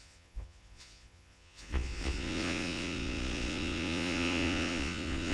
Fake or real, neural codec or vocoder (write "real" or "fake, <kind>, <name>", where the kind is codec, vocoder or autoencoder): fake, vocoder, Vocos